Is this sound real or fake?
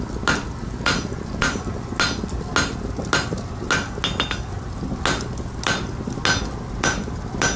real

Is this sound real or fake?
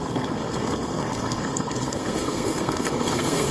fake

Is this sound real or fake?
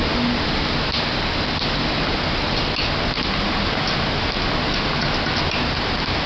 real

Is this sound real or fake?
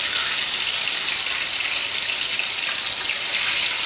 real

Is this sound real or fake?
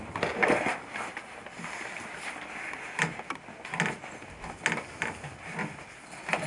real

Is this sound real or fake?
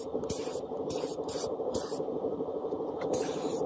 real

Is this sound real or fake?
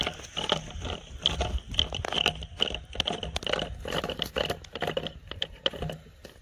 real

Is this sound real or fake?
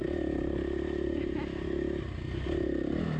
real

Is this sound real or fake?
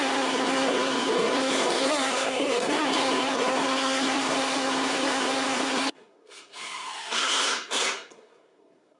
fake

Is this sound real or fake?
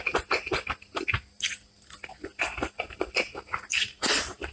real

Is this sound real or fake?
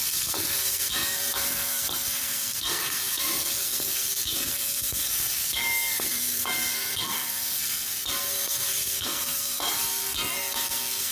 fake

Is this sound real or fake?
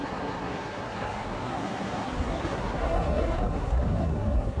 fake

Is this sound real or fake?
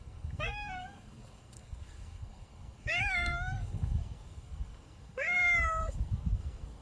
fake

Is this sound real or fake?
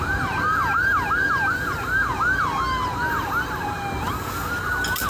real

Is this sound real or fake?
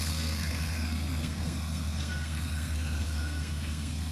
fake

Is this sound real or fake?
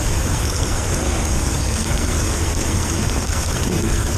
fake